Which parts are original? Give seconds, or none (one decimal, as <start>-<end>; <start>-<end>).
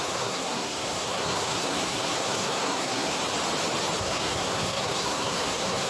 3.2-4.0